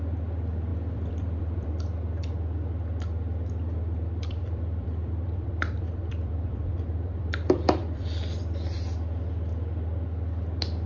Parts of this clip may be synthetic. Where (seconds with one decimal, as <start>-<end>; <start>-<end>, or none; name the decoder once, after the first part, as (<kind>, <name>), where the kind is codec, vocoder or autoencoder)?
0.7-1.7 (vocoder, BigVGAN v2); 3.6-8.4